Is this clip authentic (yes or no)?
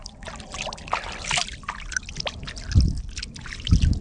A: yes